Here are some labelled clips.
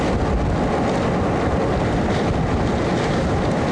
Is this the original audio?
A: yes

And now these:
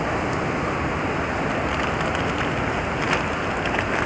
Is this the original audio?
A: yes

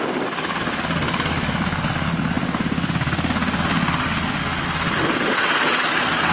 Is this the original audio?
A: yes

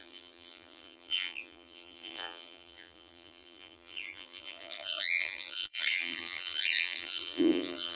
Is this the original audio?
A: no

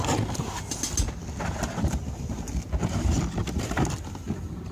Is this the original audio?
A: yes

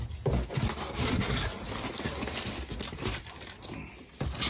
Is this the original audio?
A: yes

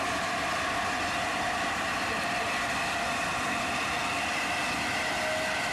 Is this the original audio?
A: yes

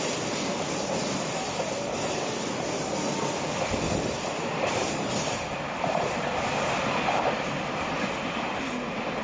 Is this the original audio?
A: no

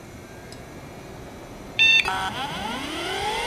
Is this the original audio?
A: no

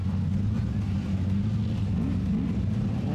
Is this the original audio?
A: yes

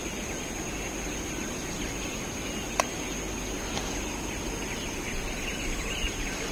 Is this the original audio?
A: yes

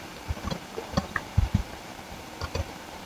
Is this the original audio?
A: no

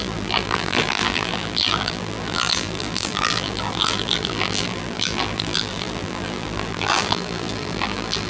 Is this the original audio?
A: no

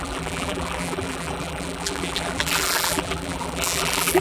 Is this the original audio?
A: no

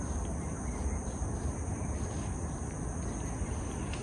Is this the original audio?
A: yes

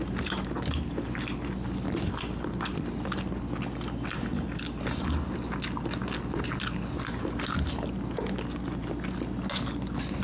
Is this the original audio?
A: yes